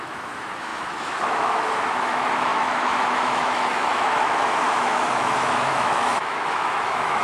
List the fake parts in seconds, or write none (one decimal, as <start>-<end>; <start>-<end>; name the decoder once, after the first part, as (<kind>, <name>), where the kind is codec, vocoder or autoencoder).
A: 0.0-7.2 (autoencoder, DAC-VAE)